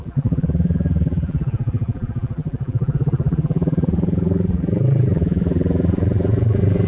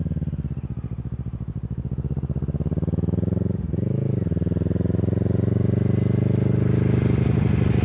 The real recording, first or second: second